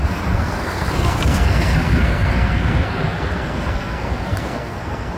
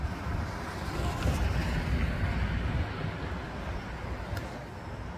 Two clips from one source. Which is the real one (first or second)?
second